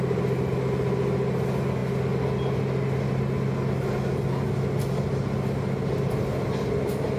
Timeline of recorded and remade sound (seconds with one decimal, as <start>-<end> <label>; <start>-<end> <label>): 0.0-7.2 recorded